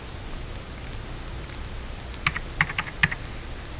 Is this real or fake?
real